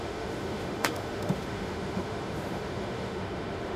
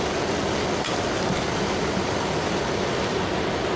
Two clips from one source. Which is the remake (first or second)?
first